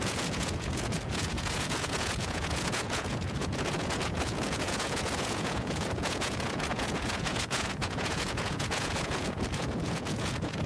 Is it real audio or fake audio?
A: fake